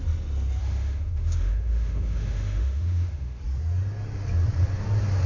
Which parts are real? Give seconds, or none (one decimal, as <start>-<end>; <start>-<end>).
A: 0.0-0.6; 3.4-5.3